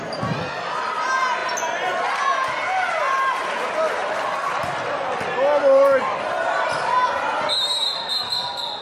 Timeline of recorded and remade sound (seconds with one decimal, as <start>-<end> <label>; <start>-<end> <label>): 0.0-4.0 recorded; 4.0-8.8 remade